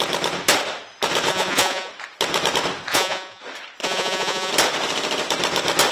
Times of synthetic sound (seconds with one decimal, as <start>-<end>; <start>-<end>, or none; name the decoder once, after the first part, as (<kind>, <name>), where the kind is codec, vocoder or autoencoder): 1.3-1.9 (vocoder, Vocos); 2.9-3.4; 3.8-4.5